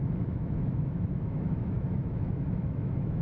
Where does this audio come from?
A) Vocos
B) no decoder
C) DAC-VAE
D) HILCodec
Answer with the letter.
C